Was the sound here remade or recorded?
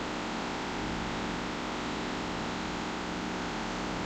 recorded